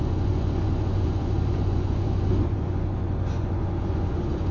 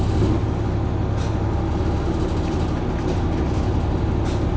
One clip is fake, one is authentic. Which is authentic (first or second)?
second